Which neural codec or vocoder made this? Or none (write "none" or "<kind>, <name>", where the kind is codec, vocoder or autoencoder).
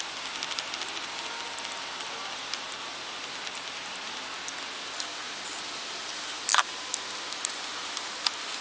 none